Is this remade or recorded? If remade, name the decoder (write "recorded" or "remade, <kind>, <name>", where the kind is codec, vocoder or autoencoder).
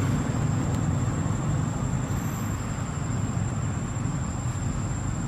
recorded